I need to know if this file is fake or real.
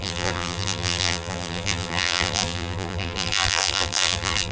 fake